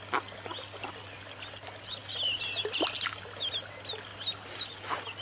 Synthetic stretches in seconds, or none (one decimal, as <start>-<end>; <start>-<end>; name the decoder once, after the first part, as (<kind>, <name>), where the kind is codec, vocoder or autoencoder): none